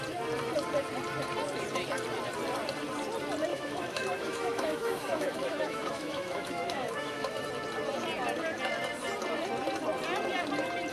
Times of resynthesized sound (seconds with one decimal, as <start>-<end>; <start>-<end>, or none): 3.5-7.5